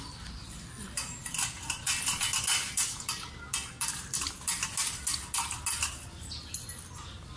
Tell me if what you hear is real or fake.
real